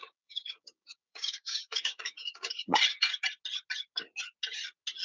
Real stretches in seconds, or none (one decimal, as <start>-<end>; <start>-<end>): 2.8-5.0